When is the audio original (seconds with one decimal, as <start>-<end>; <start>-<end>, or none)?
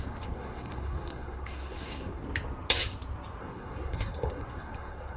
2.2-3.4